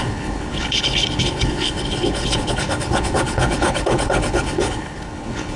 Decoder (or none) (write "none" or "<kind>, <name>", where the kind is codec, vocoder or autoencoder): codec, HILCodec